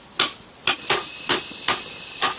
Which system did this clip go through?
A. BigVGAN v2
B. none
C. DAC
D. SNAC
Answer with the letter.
B